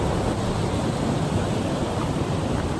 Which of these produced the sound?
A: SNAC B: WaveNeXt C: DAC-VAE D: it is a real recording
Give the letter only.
D